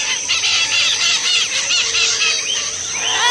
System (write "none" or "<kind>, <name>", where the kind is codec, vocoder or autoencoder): none